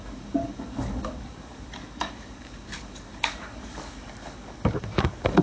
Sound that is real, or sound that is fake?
fake